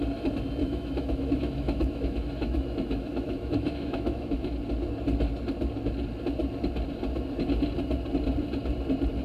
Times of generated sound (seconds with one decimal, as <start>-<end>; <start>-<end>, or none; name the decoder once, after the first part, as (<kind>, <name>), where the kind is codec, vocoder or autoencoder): 0.6-4.6 (autoencoder, DAC-VAE)